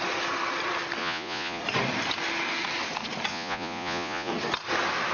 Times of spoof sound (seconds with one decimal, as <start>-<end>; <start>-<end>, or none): 1.0-1.6; 3.3-4.3